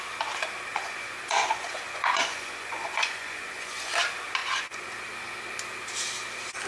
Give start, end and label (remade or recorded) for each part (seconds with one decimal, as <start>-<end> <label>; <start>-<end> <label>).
0.0-0.7 recorded; 0.7-3.9 remade; 3.9-4.4 recorded; 4.4-4.9 remade; 4.9-6.7 recorded